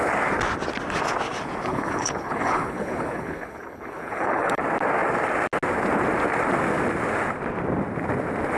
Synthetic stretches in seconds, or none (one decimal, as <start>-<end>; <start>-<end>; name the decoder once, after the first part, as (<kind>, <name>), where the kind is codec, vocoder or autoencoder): 1.7-4.6 (codec, HILCodec)